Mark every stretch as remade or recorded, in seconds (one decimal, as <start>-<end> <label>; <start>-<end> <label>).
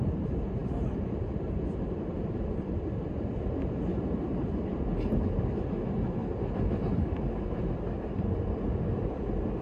0.0-3.9 remade; 3.9-5.6 recorded; 5.6-6.2 remade; 6.2-8.2 recorded; 8.2-9.6 remade